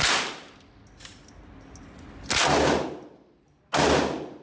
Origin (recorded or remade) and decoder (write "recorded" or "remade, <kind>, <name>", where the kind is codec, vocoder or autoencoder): recorded